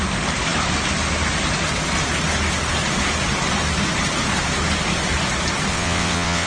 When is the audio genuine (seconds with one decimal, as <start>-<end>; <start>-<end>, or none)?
0.0-5.7